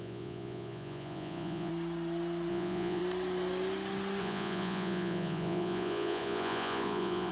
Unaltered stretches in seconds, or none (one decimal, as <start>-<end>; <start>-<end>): 1.7-2.5; 3.0-4.2